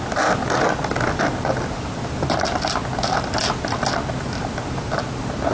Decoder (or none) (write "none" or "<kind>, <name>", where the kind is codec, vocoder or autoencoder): none